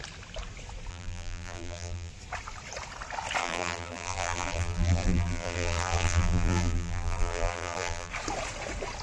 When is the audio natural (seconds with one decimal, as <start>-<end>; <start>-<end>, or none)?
0.0-0.9; 2.1-3.4; 8.1-9.0